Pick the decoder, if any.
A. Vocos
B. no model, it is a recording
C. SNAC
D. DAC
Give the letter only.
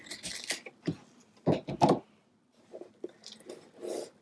B